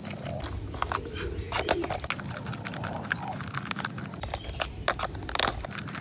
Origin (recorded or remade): recorded